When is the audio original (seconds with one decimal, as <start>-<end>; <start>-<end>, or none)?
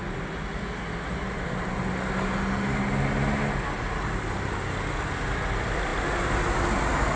0.0-7.2